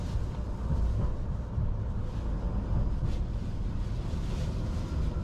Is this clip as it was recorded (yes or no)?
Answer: yes